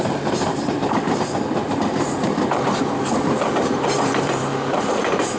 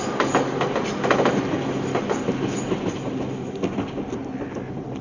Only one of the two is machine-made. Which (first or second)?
first